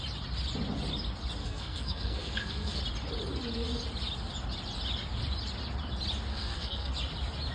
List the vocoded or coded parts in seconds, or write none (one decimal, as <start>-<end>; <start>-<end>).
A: 1.4-2.8; 6.3-6.9